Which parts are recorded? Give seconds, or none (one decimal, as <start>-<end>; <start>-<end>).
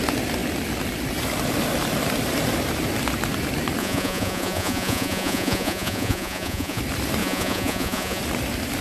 0.0-3.8; 6.8-7.2; 8.2-8.8